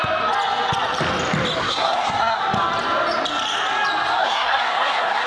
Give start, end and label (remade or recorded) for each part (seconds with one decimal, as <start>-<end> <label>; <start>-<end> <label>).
0.0-1.6 recorded; 1.6-2.4 remade; 2.4-4.2 recorded; 4.2-5.3 remade